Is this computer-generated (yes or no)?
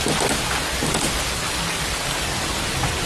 no